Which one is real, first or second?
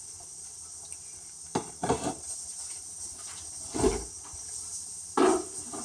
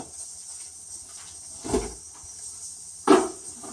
second